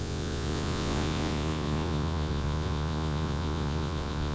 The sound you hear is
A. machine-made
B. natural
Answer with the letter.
A